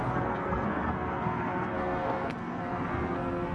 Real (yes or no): no